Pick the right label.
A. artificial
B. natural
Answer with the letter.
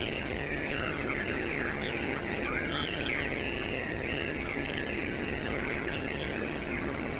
A